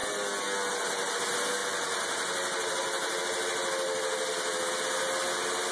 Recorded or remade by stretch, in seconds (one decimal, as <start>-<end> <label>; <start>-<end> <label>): 0.0-5.7 recorded